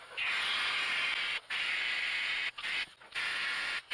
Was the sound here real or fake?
real